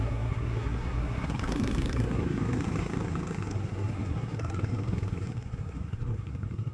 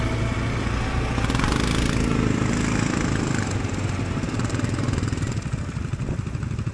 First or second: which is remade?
first